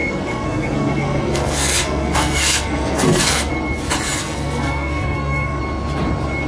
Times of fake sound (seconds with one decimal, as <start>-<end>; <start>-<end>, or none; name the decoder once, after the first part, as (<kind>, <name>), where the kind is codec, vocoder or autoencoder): 0.0-3.5 (codec, SNAC); 4.2-5.6